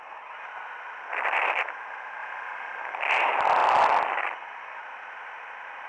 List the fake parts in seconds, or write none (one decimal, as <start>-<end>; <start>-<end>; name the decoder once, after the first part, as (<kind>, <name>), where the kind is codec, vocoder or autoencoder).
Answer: none